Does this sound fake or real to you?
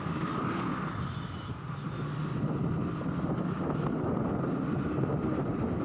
real